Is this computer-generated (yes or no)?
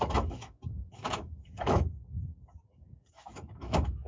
yes